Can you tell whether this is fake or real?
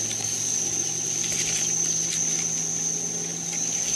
real